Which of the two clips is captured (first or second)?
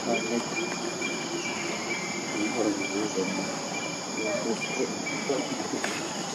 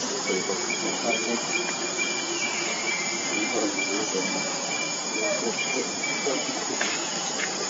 first